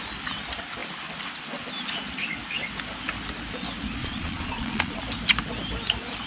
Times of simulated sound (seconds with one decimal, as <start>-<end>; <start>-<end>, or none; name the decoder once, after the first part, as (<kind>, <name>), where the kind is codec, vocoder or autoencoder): 4.0-5.0 (vocoder, Vocos)